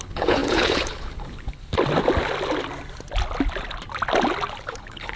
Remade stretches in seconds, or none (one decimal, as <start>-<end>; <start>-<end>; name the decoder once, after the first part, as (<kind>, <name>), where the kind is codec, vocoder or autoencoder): 0.0-1.6 (codec, HILCodec); 4.7-5.2